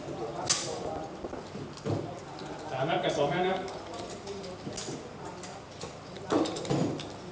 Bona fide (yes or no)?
yes